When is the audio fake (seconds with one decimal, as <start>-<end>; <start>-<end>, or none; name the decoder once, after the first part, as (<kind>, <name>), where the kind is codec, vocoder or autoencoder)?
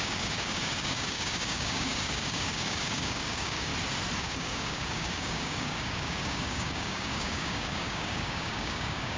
0.0-3.7 (codec, DAC); 4.2-9.2